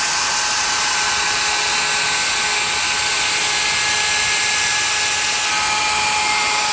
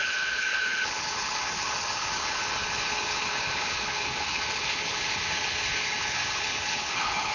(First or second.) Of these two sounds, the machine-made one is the second